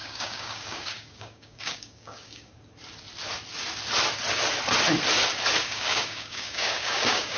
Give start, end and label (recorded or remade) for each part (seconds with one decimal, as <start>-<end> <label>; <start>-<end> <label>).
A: 0.0-2.5 remade; 2.5-5.6 recorded; 5.6-7.4 remade